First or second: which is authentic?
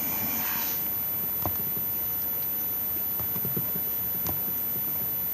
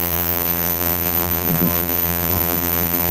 first